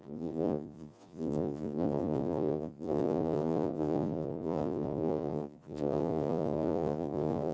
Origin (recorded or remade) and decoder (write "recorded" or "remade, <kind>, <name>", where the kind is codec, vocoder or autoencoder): remade, vocoder, Vocos